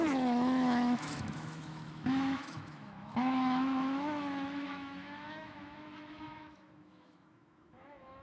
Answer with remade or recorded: remade